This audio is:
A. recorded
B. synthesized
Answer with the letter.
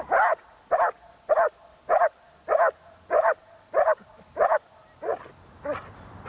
A